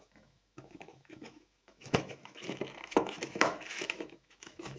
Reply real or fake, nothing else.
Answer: fake